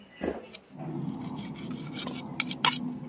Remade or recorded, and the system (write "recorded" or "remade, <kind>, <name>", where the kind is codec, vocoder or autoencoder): recorded